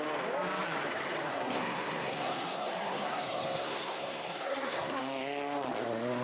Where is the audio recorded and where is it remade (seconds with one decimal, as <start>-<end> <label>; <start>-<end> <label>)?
0.0-1.3 recorded; 1.3-5.0 remade; 5.0-6.2 recorded